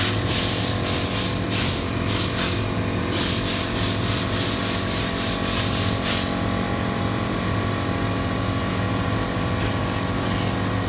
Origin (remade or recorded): remade